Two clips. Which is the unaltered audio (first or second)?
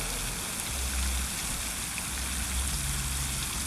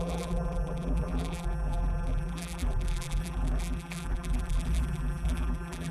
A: first